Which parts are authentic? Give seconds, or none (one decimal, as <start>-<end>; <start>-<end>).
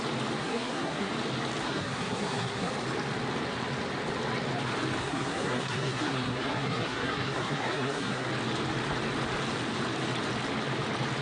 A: 0.0-0.4; 1.1-1.6; 2.7-5.0; 8.3-11.2